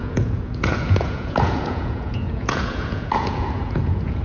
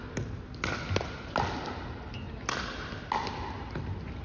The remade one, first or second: first